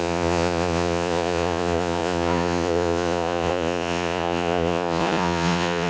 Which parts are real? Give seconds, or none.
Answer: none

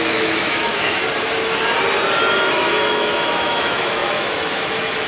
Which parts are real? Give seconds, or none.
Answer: 1.0-2.5

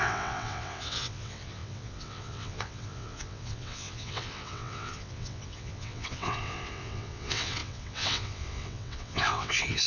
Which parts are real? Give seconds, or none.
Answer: none

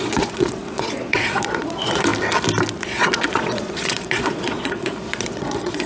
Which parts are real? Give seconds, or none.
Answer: 2.1-2.8